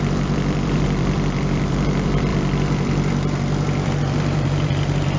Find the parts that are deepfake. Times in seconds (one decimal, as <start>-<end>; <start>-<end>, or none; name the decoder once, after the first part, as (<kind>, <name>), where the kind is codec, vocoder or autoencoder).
0.0-5.2 (vocoder, BigVGAN v2)